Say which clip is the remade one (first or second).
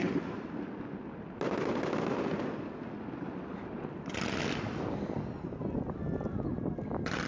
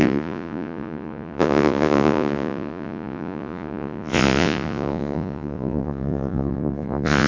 second